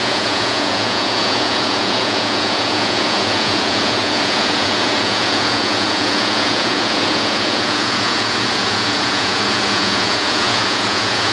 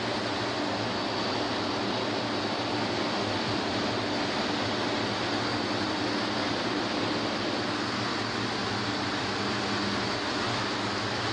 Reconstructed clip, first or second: first